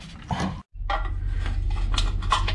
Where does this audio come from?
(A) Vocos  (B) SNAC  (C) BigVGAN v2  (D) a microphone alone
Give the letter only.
D